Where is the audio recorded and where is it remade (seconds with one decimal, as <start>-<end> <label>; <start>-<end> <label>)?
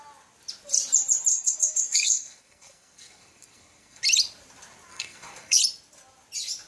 0.0-1.3 recorded; 1.3-4.0 remade; 4.0-4.9 recorded; 4.9-5.6 remade; 5.6-6.7 recorded